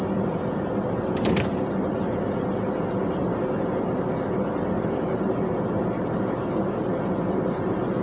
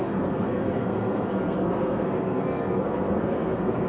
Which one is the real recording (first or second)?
first